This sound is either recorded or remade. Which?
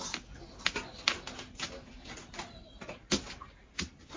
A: recorded